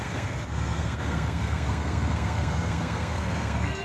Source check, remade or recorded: remade